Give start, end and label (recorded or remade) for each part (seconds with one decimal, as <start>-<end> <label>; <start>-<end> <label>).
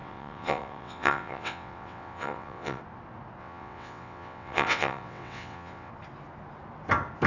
0.0-2.8 remade; 2.8-3.4 recorded; 3.4-5.9 remade; 5.9-7.3 recorded